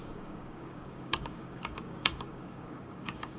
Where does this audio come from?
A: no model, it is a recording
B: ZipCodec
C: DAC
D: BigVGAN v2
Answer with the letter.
C